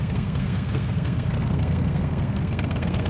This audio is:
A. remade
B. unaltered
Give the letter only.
A